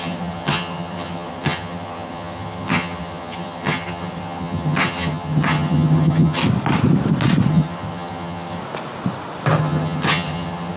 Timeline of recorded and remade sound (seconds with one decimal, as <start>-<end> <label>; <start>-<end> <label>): 0.0-6.4 remade; 6.4-7.5 recorded; 7.5-8.6 remade; 8.6-9.6 recorded; 9.6-10.8 remade